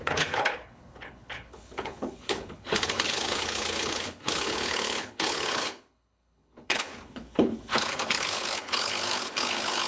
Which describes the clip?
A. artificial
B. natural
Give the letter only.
A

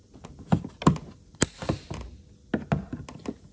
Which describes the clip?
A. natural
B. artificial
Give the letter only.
A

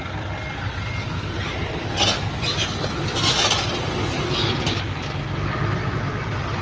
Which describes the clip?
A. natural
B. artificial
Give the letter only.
A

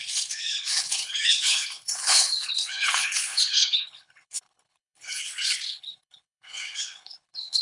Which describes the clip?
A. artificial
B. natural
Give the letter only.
A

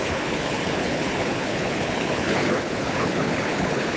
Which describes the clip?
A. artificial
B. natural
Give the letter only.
A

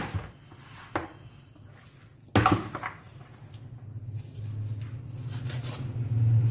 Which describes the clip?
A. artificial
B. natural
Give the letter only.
B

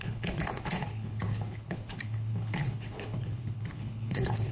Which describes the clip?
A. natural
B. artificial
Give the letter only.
B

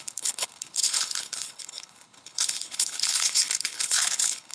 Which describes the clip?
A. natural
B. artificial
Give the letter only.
B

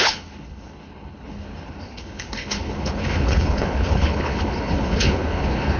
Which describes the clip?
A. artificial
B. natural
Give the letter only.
A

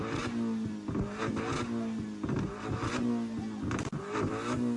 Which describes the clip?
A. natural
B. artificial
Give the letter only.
A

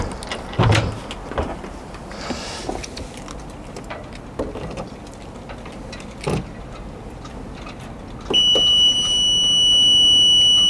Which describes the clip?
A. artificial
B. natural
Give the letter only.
B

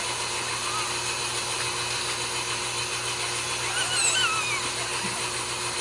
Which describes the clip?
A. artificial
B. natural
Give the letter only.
B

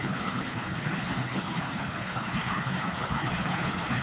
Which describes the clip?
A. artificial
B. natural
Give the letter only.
A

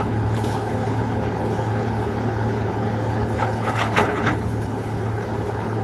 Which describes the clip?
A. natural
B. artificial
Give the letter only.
B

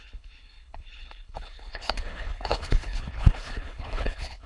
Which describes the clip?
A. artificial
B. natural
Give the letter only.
A